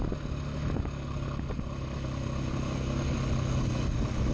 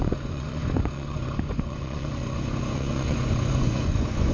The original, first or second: first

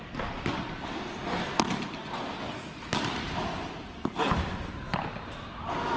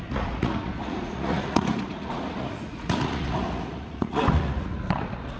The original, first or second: first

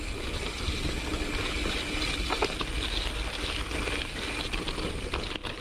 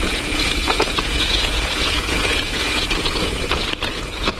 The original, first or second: first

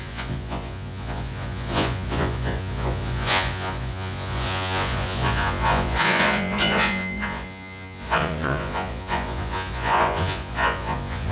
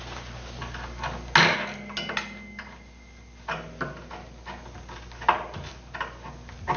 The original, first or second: second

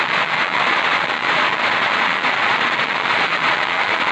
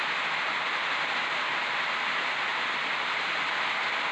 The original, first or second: second